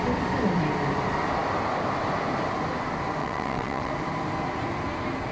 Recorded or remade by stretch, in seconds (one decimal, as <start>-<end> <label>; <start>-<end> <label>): 0.0-3.2 recorded; 3.2-3.9 remade; 3.9-5.3 recorded